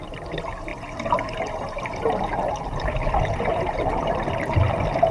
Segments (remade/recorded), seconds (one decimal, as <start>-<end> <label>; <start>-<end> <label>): 0.0-5.1 recorded